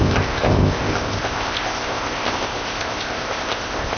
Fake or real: fake